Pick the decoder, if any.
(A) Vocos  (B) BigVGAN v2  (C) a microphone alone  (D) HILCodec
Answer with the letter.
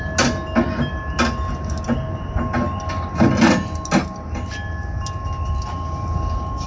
C